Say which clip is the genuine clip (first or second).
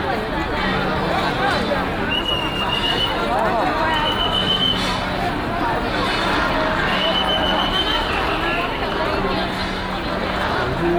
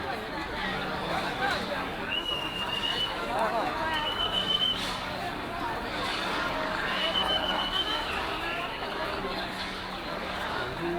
first